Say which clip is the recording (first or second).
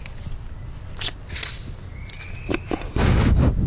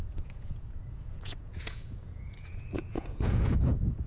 first